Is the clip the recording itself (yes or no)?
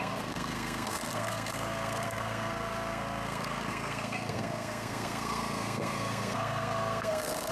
no